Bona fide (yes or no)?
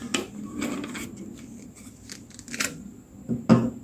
yes